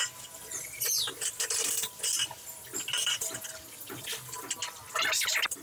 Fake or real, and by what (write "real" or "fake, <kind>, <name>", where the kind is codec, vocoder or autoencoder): real